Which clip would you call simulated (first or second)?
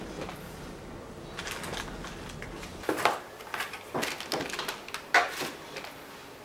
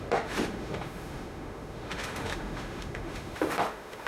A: second